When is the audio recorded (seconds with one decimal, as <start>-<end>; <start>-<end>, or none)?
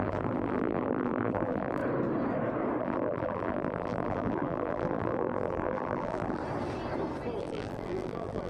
1.8-2.8; 6.4-7.4